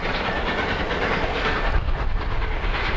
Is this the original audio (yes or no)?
yes